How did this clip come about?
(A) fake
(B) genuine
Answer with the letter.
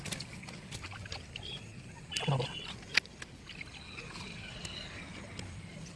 B